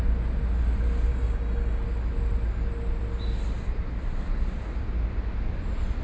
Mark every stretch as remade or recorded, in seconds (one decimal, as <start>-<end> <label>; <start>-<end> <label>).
0.0-1.1 recorded; 1.1-1.8 remade; 1.8-6.0 recorded